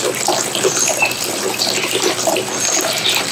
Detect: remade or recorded recorded